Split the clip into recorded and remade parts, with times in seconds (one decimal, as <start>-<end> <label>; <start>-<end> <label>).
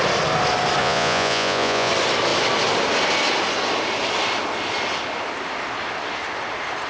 0.0-0.8 recorded; 0.8-1.9 remade; 1.9-6.9 recorded